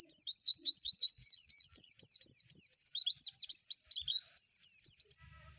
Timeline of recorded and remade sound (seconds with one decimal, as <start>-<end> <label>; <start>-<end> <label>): 0.0-0.4 recorded; 0.4-1.9 remade; 1.9-5.6 recorded

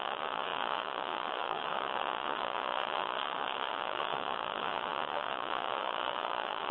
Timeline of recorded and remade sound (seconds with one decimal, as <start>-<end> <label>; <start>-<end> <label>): 0.0-6.7 remade

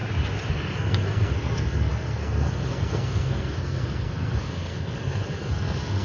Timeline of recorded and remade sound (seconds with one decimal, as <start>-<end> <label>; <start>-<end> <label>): 0.0-0.5 recorded; 0.5-6.0 remade

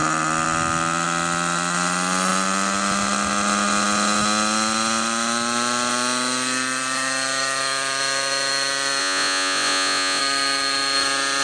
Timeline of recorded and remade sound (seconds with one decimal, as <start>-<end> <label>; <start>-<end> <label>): 0.0-9.0 recorded; 9.0-10.2 remade; 10.2-11.4 recorded

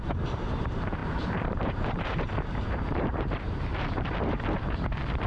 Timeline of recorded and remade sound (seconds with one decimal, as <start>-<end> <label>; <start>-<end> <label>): 0.0-5.3 remade

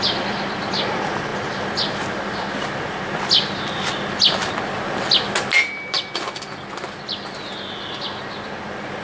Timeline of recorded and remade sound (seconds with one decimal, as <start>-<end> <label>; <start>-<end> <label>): 0.0-9.0 recorded